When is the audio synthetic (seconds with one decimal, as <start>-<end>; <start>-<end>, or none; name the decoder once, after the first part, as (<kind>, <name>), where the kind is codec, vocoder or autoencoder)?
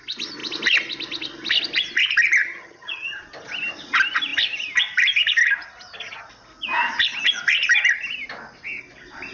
2.4-3.2 (vocoder, HiFi-GAN)